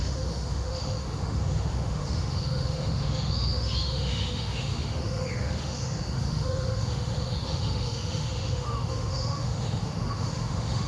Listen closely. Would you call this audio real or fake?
fake